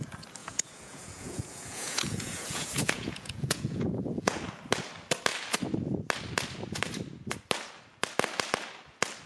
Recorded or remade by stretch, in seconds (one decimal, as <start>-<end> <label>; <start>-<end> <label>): 0.0-0.4 recorded; 0.4-4.4 remade; 4.4-9.3 recorded